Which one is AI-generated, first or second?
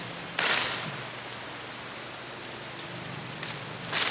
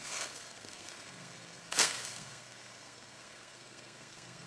second